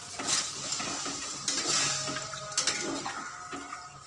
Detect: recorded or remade recorded